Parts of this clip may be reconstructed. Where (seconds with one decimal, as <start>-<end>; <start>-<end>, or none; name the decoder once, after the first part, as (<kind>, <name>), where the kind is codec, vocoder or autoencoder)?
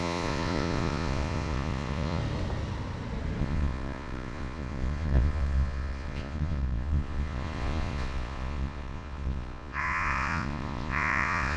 0.0-2.2 (vocoder, Vocos); 3.4-11.6